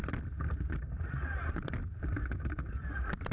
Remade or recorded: recorded